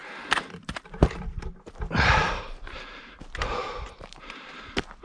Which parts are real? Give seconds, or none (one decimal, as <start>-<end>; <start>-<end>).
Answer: 3.0-3.6; 4.6-5.0